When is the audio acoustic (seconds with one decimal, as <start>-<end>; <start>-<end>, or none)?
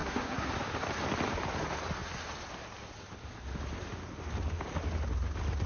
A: 0.5-5.7